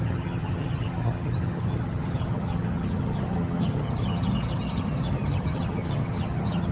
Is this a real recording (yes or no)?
no